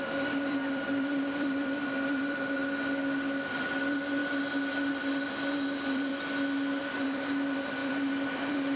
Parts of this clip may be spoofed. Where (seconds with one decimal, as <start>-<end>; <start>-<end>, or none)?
0.0-2.6; 3.5-6.1; 6.8-8.8